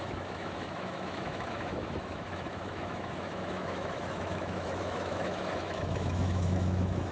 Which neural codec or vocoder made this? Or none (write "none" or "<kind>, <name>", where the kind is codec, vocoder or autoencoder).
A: autoencoder, DAC-VAE